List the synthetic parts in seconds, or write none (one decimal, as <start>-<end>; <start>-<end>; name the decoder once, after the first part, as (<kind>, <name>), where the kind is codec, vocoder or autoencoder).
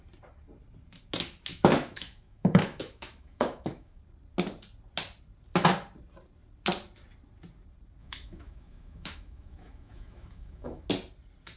1.5-4.0 (autoencoder, DAC-VAE); 8.0-10.9